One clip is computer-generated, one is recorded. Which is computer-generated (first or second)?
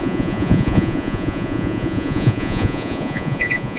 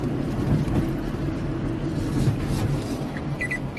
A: first